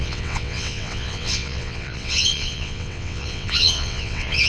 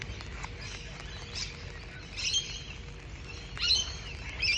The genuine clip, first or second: second